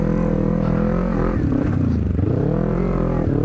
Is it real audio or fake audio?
real